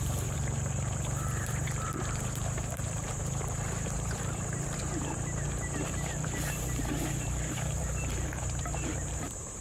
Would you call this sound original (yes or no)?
no